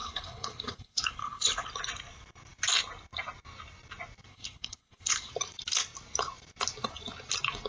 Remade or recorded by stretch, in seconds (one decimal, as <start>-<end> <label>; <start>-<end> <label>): 0.0-1.7 remade; 1.7-4.3 recorded; 4.3-5.3 remade; 5.3-7.7 recorded